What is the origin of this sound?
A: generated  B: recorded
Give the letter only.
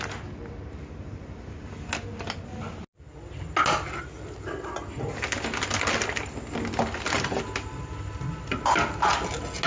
B